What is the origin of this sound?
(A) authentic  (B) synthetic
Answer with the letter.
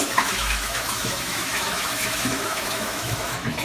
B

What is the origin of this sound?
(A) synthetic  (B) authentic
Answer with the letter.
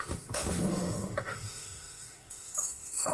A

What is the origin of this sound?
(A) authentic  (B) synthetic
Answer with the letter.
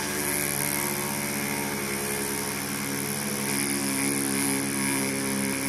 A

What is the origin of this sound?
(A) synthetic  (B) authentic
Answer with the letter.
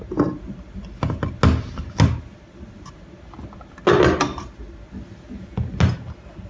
B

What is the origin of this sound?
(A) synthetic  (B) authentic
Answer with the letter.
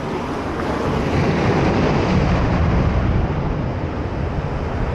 B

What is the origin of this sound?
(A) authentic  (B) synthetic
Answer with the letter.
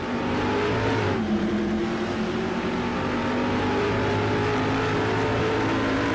B